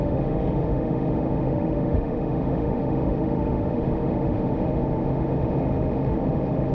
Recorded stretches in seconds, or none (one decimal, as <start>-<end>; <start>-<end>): none